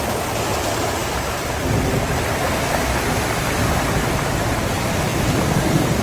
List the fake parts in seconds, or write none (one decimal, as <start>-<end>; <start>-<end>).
5.1-6.0